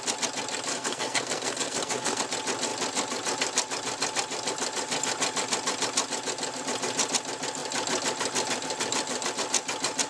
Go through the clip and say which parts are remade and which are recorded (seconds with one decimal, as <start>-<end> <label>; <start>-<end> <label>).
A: 0.0-0.7 recorded; 0.7-2.2 remade; 2.2-10.1 recorded